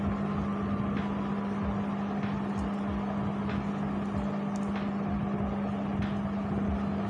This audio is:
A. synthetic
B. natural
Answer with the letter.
B